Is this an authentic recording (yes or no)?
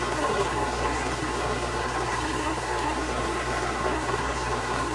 no